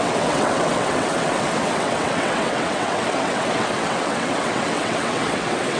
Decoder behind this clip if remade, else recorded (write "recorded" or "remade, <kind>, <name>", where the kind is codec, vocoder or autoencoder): remade, vocoder, WaveNeXt